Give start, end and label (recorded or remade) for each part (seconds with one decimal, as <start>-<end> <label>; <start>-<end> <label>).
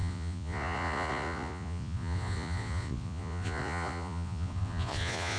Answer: 0.0-5.4 remade